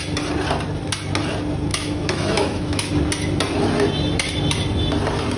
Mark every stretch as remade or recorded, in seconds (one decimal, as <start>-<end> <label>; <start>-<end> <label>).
0.0-1.7 recorded; 1.7-2.9 remade; 2.9-5.4 recorded